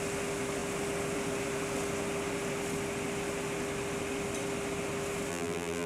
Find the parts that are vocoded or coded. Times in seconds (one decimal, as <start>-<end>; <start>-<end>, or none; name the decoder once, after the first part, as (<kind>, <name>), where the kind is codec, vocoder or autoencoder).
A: 5.3-5.9 (vocoder, BigVGAN v2)